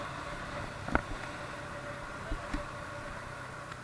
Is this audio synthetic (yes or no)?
no